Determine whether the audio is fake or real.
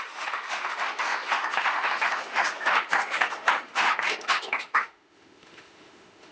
fake